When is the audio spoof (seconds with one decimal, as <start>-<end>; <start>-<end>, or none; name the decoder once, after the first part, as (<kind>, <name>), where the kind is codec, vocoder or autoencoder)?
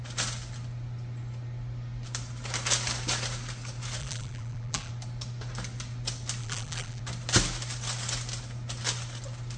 4.0-4.9 (vocoder, BigVGAN v2); 6.4-7.0